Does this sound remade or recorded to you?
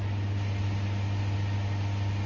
recorded